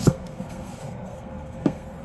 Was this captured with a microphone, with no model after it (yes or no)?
no